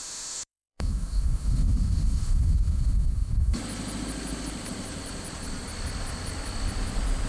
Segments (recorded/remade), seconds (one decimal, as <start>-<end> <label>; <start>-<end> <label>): 0.0-3.6 remade; 3.6-7.3 recorded